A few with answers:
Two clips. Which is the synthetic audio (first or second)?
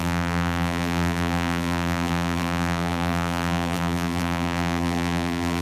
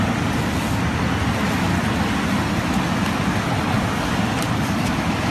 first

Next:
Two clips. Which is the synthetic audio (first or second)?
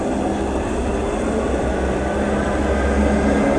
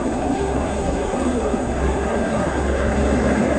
second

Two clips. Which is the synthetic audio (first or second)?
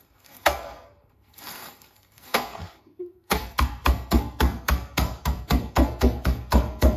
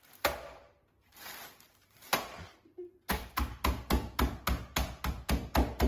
first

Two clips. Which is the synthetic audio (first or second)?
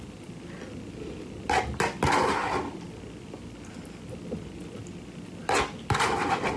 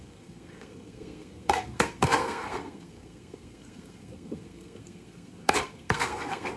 second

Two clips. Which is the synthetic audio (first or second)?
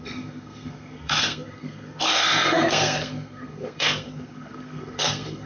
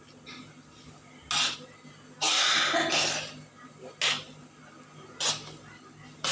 first